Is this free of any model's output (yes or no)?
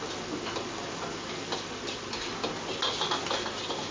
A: yes